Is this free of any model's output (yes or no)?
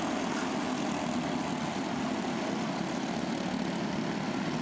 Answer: yes